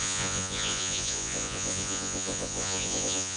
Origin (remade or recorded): remade